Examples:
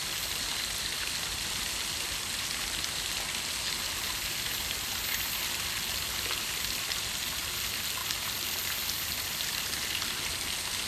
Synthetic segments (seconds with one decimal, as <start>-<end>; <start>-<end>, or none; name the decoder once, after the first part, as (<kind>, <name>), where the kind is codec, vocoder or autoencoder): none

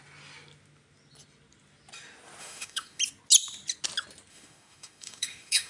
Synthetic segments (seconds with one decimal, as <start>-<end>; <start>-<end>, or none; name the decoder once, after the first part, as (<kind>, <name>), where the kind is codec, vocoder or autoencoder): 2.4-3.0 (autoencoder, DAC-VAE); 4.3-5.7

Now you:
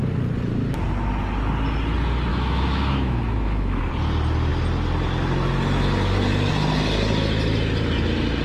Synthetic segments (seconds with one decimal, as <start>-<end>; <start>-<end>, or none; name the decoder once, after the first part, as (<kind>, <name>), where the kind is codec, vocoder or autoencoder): 2.3-3.8 (autoencoder, DAC-VAE)